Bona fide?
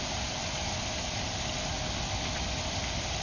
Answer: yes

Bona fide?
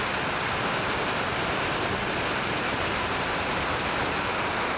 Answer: yes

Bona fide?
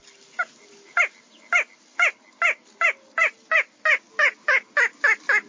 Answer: yes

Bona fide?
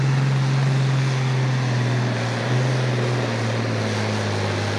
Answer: yes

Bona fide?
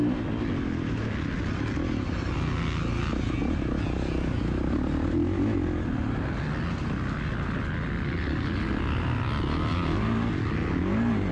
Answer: yes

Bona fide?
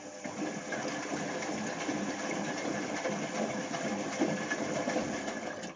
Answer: yes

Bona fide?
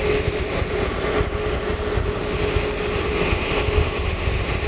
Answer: yes